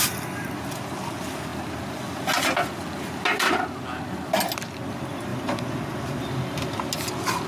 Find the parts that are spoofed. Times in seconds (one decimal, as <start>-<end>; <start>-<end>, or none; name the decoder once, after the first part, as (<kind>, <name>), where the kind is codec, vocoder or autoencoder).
none